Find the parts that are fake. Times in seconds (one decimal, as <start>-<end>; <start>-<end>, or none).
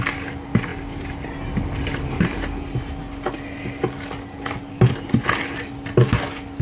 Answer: none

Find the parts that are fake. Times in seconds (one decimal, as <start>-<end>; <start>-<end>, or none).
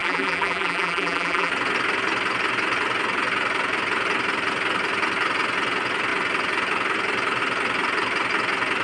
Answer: 0.0-1.5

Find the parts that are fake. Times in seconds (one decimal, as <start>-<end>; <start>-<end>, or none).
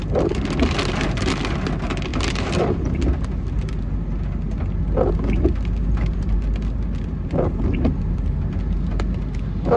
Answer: 2.1-3.2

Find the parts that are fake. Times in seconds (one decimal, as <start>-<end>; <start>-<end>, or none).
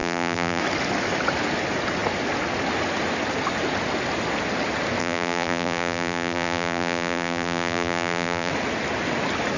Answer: 0.0-0.6; 5.0-8.5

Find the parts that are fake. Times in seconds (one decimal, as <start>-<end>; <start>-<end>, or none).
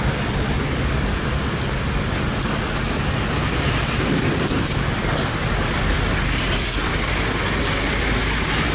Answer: none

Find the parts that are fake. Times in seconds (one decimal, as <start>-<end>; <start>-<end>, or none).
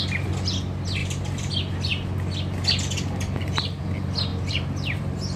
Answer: 1.0-1.5; 4.3-5.4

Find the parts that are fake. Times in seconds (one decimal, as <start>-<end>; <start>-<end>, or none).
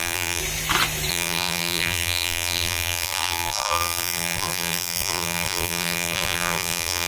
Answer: 0.0-0.4; 1.1-7.1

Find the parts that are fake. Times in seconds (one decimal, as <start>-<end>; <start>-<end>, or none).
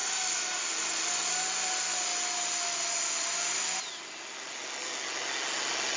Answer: none